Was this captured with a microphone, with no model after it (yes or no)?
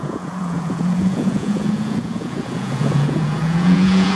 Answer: no